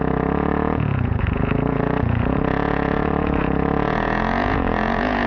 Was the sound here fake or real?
fake